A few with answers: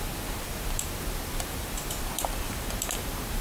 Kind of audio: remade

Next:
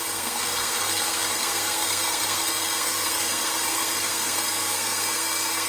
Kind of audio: remade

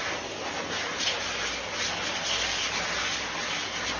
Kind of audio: recorded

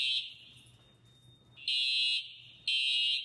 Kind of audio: recorded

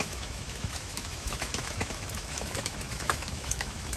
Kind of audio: remade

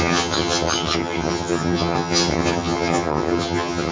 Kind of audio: remade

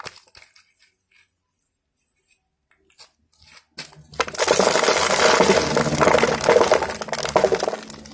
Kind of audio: recorded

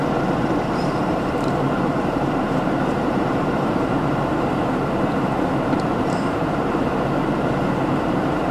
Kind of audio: remade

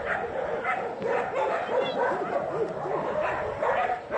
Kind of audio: recorded